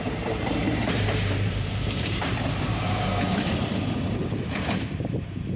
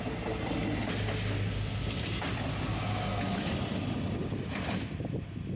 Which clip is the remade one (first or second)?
first